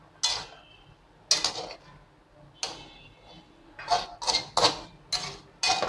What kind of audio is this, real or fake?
real